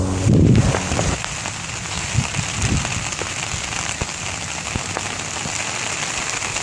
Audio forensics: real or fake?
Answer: real